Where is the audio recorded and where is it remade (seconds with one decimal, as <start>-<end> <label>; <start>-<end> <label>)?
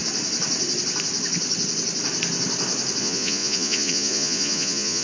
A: 0.0-3.0 recorded; 3.0-5.0 remade